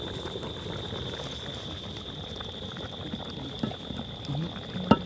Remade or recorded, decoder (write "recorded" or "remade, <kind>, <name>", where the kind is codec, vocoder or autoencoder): recorded